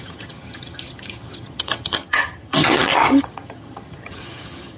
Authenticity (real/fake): fake